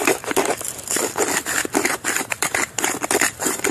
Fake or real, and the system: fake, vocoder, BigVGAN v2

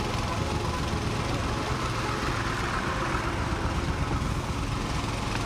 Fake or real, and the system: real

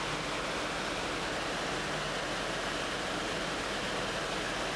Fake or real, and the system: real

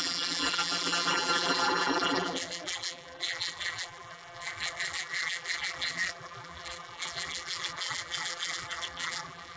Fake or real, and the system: fake, vocoder, BigVGAN v2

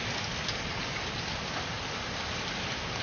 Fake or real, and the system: real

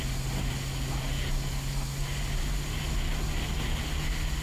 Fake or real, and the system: real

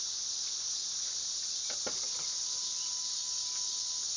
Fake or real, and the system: real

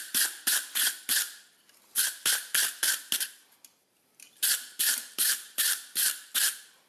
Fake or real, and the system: fake, vocoder, BigVGAN v2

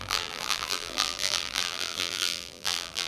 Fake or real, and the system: fake, vocoder, BigVGAN v2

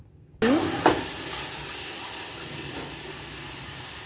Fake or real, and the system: real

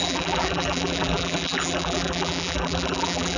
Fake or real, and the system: fake, vocoder, BigVGAN v2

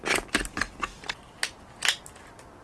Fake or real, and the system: real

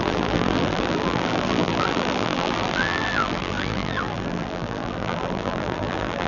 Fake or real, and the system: fake, vocoder, BigVGAN v2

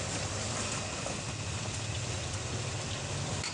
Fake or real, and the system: fake, vocoder, BigVGAN v2